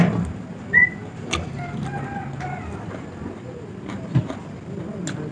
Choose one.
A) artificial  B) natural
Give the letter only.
B